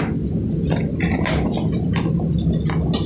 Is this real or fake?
real